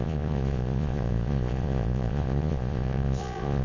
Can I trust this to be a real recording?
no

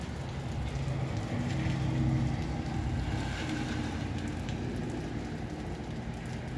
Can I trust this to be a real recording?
yes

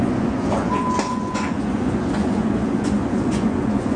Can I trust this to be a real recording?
no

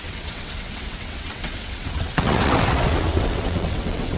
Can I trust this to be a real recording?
no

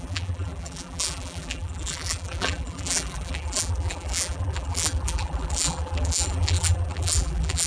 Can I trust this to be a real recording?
no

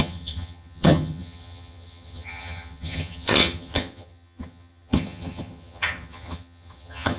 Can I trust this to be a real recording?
no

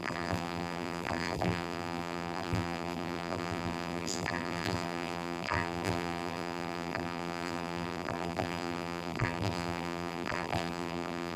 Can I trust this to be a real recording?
no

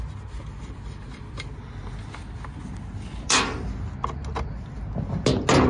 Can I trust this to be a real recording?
yes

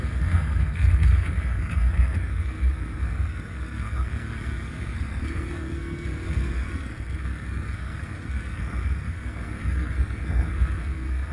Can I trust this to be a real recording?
no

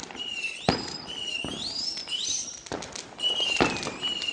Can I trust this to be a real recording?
yes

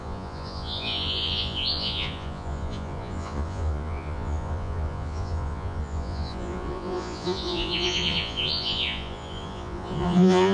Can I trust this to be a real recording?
no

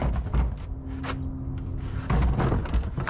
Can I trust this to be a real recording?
yes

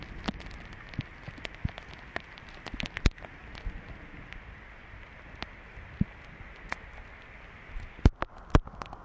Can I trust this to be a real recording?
yes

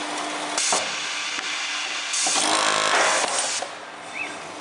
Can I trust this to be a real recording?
yes